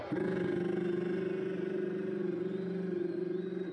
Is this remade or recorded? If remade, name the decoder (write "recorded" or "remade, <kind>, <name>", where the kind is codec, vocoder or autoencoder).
recorded